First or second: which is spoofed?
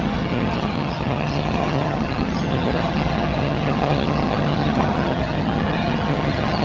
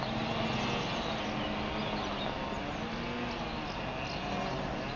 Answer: first